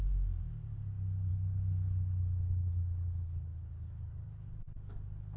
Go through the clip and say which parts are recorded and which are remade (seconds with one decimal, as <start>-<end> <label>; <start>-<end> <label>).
0.0-1.3 recorded; 1.3-4.5 remade; 4.5-5.4 recorded